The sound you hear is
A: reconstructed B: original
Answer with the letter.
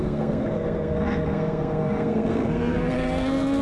A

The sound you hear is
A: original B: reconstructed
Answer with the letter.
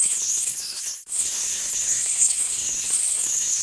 B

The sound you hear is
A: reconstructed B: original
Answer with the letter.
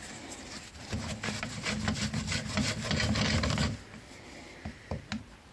B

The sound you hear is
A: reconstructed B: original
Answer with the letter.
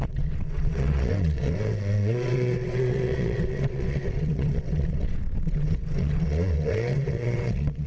A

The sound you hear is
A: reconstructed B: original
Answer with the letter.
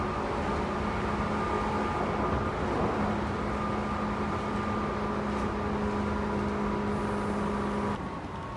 B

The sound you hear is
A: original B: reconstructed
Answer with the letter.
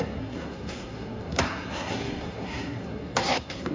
B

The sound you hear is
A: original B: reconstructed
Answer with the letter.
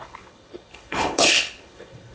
B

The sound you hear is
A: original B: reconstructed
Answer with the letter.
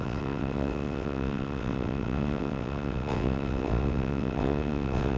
B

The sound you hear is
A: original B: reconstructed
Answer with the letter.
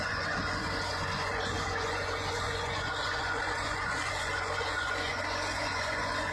B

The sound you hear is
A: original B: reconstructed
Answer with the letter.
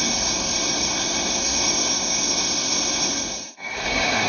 B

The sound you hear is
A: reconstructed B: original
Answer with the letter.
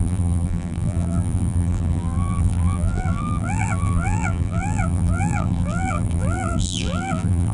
A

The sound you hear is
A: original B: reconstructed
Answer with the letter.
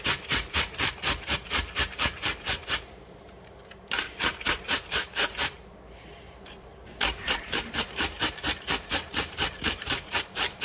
B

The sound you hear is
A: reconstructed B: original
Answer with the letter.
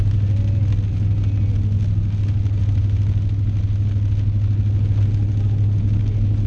B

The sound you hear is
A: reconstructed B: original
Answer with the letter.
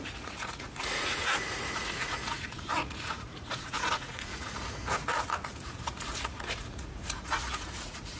A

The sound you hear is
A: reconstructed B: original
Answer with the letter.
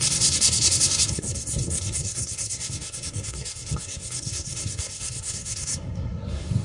A